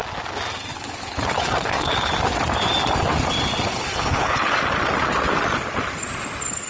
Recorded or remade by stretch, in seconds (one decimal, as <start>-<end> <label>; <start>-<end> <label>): 0.0-0.7 recorded; 0.7-2.1 remade; 2.1-3.7 recorded; 3.7-4.6 remade; 4.6-6.7 recorded